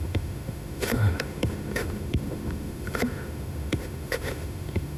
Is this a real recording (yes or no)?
no